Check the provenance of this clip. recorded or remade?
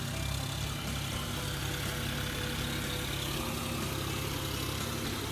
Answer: recorded